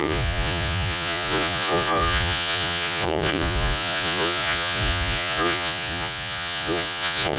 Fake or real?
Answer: fake